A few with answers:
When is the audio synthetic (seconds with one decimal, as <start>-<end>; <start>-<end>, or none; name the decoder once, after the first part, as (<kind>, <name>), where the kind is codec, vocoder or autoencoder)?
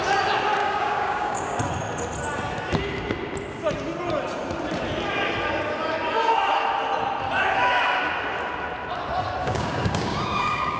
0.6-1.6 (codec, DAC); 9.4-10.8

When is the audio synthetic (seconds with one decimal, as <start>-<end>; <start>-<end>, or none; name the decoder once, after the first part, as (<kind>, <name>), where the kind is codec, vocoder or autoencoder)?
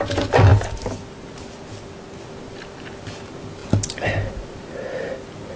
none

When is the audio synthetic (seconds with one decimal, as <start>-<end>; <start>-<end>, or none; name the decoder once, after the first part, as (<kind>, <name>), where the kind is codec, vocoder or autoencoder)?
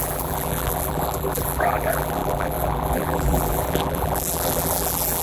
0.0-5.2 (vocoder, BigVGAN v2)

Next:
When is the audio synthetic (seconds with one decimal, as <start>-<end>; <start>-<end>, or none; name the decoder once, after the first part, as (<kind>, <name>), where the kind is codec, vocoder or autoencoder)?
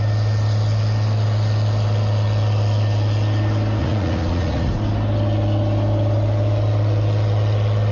3.8-4.7 (vocoder, Vocos)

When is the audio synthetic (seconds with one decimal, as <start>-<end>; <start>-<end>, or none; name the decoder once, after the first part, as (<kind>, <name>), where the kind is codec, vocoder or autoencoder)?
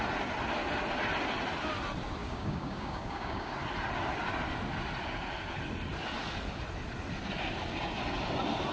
2.2-3.5 (codec, DAC)